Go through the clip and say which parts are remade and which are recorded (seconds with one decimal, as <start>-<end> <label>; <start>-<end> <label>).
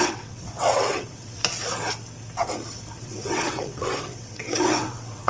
0.0-1.4 remade; 1.4-3.0 recorded; 3.0-5.3 remade